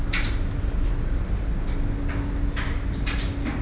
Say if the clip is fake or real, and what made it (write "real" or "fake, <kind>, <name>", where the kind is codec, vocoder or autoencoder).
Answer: real